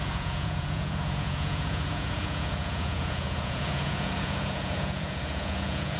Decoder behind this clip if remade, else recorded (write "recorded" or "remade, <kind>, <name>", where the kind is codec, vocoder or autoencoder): remade, vocoder, Vocos